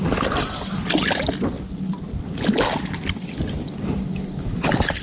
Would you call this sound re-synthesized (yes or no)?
no